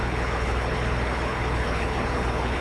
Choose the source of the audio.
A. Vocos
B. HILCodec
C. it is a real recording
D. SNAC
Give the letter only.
B